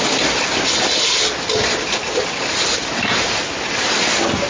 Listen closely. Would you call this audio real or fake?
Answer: real